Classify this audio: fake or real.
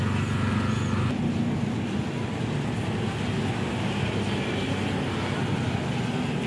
real